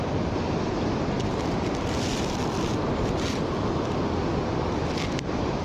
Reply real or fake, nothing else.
real